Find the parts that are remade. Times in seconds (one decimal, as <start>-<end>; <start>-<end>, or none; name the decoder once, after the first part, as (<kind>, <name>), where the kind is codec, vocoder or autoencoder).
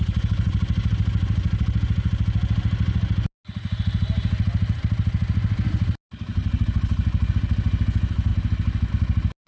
none